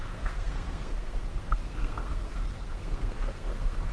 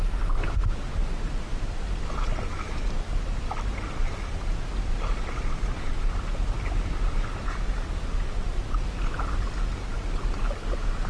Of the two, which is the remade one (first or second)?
first